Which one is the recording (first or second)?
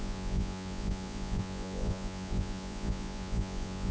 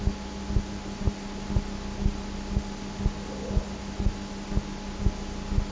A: second